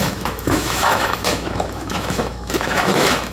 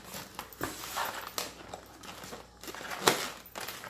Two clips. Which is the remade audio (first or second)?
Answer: first